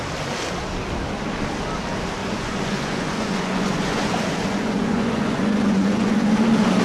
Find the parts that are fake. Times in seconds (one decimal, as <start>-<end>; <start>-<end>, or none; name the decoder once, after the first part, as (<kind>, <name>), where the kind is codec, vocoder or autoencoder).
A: 2.2-6.3 (vocoder, Vocos)